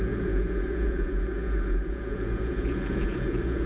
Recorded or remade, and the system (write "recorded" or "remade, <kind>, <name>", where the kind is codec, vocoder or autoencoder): remade, vocoder, Vocos